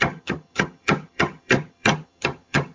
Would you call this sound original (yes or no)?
no